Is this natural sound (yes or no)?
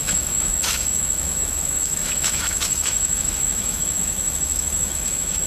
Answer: no